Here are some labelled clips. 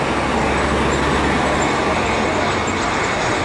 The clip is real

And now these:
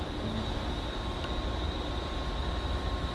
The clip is real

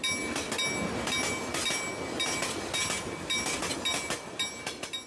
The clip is real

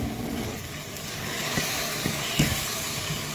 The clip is fake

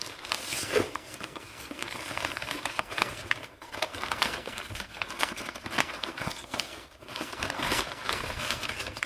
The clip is fake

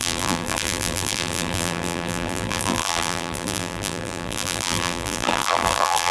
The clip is fake